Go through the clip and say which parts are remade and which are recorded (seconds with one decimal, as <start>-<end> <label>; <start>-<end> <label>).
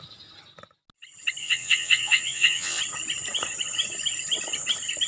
0.0-1.4 recorded; 1.4-2.8 remade; 2.8-5.1 recorded